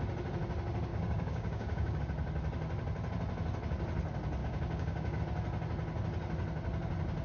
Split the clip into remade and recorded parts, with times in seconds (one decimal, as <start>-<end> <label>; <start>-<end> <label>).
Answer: 0.0-0.9 recorded; 0.9-2.0 remade; 2.0-4.4 recorded; 4.4-5.2 remade; 5.2-7.2 recorded